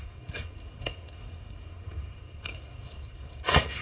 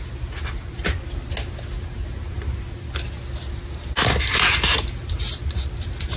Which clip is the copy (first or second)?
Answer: first